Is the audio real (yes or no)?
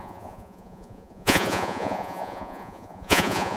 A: no